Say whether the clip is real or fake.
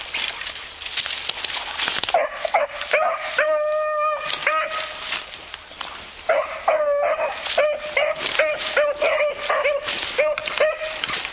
real